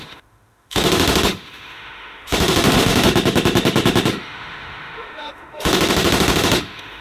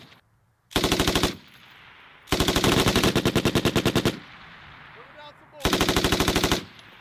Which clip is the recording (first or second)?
second